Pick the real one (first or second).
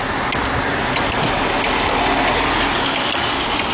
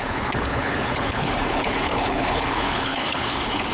first